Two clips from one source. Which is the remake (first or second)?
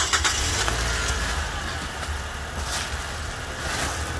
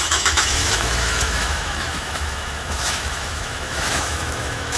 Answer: second